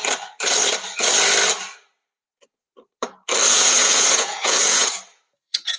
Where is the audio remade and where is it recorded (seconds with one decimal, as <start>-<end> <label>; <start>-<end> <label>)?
0.0-3.5 recorded; 3.5-5.8 remade